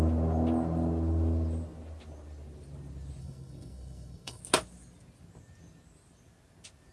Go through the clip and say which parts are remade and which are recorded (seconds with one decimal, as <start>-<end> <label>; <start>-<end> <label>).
0.0-3.2 recorded; 3.2-4.4 remade; 4.4-6.9 recorded